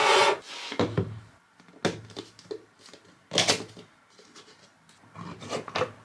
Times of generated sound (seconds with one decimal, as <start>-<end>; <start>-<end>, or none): 0.0-0.8